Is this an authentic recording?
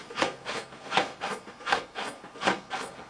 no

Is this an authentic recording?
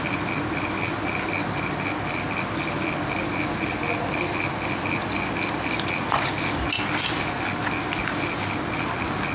yes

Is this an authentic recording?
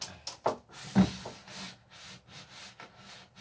yes